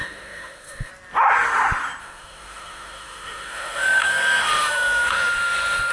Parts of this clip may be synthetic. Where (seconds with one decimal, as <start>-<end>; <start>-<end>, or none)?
0.0-0.9; 2.0-5.9